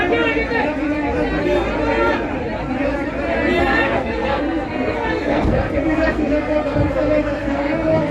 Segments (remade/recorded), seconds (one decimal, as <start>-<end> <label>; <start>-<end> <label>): 0.0-3.6 recorded; 3.6-8.1 remade